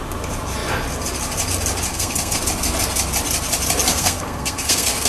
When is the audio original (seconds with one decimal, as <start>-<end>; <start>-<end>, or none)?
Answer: 0.0-1.9; 2.4-3.9